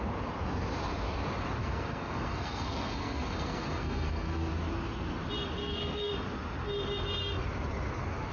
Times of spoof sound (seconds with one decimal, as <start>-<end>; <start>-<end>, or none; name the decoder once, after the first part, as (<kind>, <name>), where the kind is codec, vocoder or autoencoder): 1.6-4.5 (codec, SNAC); 5.6-6.1

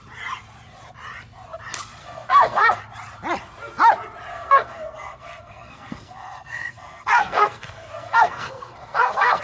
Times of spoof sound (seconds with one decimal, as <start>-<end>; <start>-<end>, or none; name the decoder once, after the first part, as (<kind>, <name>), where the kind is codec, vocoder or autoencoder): 2.0-2.8 (codec, SNAC); 4.3-9.4

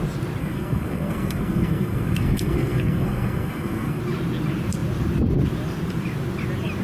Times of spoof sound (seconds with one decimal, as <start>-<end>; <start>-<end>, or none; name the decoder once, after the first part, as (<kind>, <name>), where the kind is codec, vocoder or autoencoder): 0.4-4.0 (codec, SNAC)

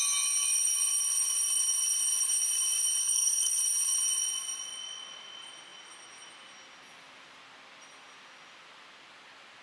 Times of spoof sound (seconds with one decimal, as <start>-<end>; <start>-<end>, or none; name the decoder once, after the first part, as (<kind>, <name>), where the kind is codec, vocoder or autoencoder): 3.0-3.6 (codec, SNAC)